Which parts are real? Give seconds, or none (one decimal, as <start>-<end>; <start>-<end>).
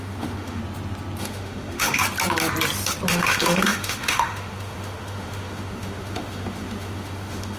0.6-1.2; 2.0-3.1